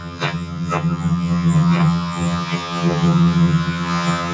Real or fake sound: fake